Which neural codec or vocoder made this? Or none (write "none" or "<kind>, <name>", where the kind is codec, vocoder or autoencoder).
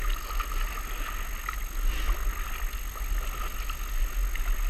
none